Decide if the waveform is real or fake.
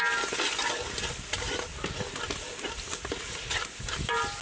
real